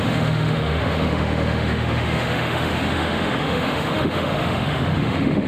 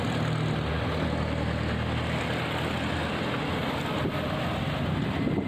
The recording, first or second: second